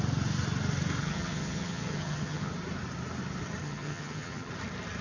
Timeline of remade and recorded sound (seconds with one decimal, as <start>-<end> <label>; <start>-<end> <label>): 0.0-1.0 recorded; 1.0-2.5 remade; 2.5-3.6 recorded; 3.6-4.5 remade; 4.5-5.0 recorded